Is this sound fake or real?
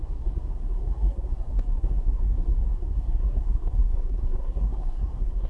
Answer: fake